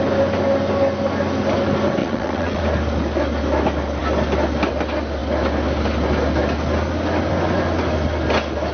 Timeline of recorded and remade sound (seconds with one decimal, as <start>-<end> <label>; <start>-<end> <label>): 0.0-2.0 recorded; 2.0-2.6 remade; 2.6-8.7 recorded